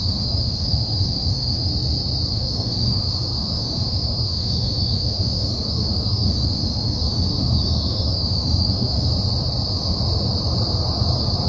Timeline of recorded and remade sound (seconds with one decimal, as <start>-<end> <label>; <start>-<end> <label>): 0.0-1.7 remade; 1.7-2.3 recorded; 2.3-9.1 remade; 9.1-11.5 recorded